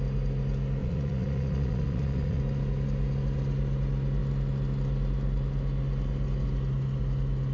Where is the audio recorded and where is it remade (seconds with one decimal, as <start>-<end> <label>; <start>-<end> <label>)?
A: 0.0-0.8 recorded; 0.8-2.4 remade; 2.4-7.5 recorded